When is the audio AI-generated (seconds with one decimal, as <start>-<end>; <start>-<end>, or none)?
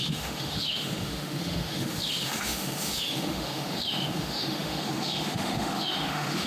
0.0-6.5